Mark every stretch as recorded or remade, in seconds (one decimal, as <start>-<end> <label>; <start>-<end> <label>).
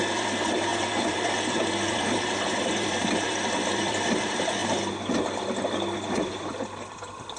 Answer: 0.0-4.6 remade; 4.6-6.4 recorded; 6.4-7.4 remade